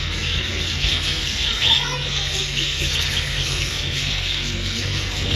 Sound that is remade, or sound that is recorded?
remade